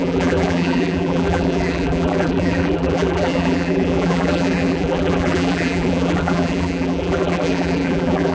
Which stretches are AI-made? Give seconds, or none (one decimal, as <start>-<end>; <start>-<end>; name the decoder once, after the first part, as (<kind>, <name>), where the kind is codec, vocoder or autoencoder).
0.0-8.3 (vocoder, BigVGAN v2)